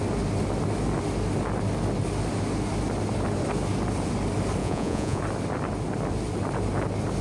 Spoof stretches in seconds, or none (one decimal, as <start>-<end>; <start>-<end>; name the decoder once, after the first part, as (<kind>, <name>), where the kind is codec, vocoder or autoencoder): 4.6-5.2 (vocoder, Vocos)